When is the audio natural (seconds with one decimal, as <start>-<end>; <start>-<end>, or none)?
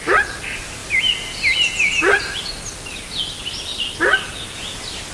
0.0-5.1